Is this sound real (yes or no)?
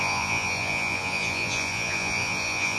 no